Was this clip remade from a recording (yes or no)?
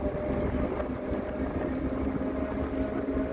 no